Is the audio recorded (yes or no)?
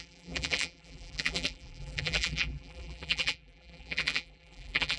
no